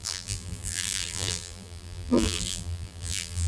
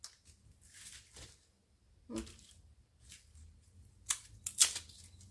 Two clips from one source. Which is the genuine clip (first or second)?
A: second